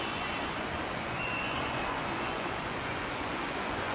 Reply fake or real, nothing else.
fake